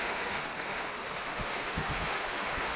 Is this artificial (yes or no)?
yes